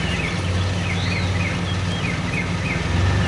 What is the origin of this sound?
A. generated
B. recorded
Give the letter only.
B